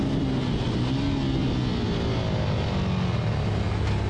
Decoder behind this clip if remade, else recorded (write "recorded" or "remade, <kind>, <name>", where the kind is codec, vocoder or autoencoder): recorded